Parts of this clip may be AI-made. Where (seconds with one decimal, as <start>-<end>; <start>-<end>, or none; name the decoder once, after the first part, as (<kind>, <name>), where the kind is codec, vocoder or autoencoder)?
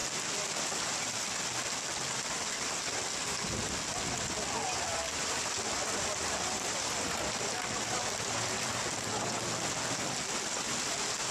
0.0-1.3 (vocoder, BigVGAN v2); 4.9-9.1